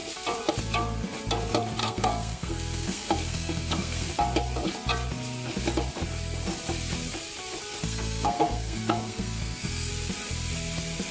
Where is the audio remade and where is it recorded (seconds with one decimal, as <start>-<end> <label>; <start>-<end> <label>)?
0.0-1.8 recorded; 1.8-4.1 remade; 4.1-7.8 recorded; 7.8-9.9 remade; 9.9-11.1 recorded